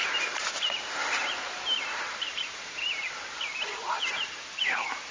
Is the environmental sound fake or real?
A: fake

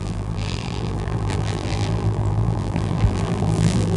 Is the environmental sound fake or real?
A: fake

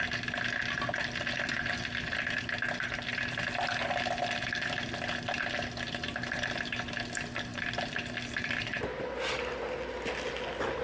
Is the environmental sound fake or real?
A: real